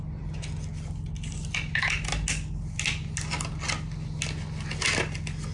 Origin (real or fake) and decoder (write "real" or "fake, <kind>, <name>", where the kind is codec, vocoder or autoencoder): real